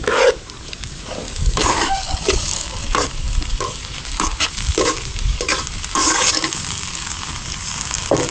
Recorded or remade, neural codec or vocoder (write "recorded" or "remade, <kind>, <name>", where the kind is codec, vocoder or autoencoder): remade, codec, DAC